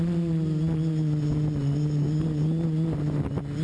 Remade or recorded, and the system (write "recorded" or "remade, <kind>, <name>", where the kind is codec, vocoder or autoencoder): recorded